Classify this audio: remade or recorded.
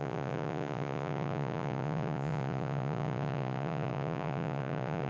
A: remade